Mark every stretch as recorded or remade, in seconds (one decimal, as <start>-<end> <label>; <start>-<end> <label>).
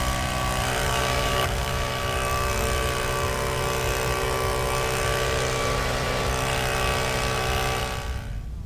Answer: 0.0-0.8 recorded; 0.8-1.9 remade; 1.9-8.7 recorded